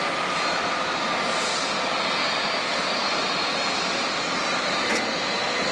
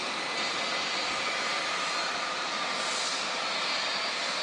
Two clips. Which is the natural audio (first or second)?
first